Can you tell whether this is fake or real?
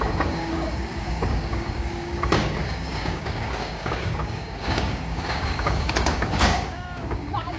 fake